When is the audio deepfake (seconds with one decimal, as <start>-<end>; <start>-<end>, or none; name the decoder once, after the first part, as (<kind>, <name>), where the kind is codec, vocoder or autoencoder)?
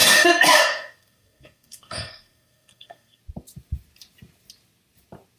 0.0-3.2 (codec, SNAC)